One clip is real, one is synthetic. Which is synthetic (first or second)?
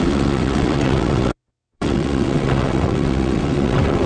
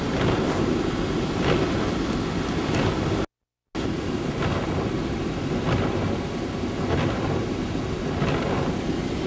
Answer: first